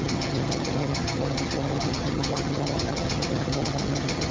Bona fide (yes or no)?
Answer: no